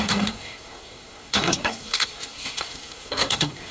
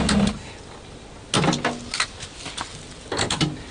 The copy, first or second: first